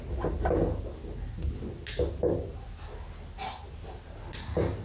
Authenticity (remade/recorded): recorded